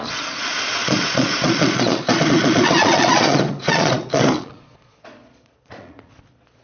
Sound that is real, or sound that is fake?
fake